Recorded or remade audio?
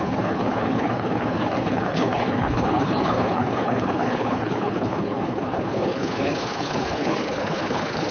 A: remade